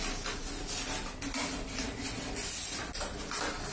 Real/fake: real